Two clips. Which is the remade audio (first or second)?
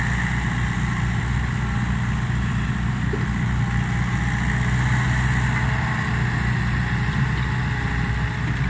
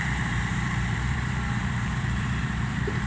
second